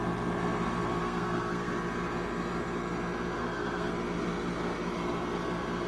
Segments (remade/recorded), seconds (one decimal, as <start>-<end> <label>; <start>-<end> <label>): 0.0-1.0 recorded; 1.0-1.7 remade; 1.7-3.4 recorded; 3.4-3.9 remade; 3.9-5.9 recorded